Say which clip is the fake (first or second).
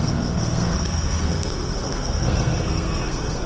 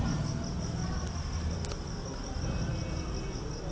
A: first